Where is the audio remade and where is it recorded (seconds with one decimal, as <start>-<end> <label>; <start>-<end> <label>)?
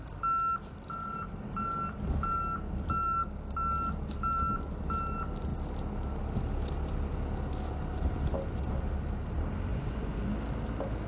0.0-9.7 recorded; 9.7-10.3 remade; 10.3-11.1 recorded